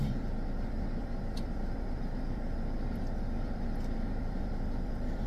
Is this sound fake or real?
fake